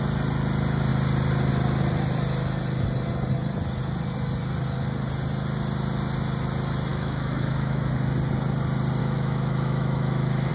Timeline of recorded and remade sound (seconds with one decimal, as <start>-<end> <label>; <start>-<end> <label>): 0.0-6.9 recorded; 6.9-7.9 remade; 7.9-9.0 recorded; 9.0-10.5 remade